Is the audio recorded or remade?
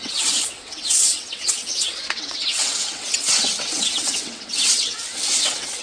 remade